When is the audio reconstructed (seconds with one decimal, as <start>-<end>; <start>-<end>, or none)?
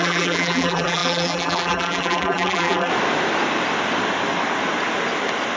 0.0-2.9